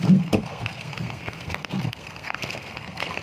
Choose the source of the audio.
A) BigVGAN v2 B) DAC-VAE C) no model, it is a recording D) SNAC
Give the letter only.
D